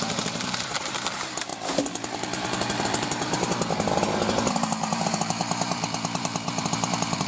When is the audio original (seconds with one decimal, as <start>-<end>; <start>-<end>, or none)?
1.5-4.5